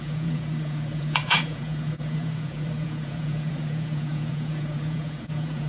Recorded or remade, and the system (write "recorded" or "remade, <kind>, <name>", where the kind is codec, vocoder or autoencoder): remade, vocoder, Vocos